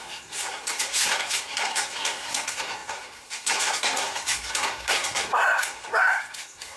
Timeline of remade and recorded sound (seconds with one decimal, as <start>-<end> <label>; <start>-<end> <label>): 0.0-6.8 remade